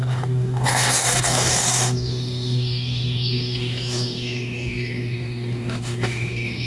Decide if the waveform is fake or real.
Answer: fake